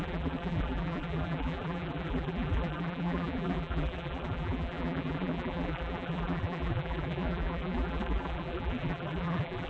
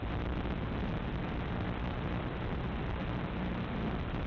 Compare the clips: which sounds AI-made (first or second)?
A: first